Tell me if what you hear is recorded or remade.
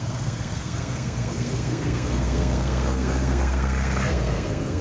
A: remade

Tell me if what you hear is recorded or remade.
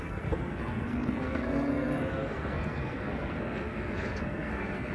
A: remade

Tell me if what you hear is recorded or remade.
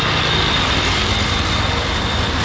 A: recorded